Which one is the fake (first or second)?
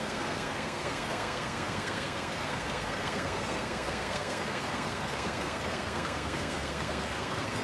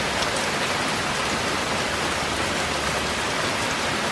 first